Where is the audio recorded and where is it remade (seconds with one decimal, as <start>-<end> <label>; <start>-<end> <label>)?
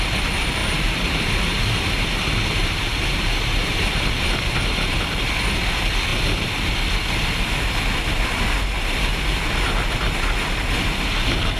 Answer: 0.0-0.6 recorded; 0.6-2.2 remade; 2.2-2.6 recorded; 2.6-3.7 remade; 3.7-11.6 recorded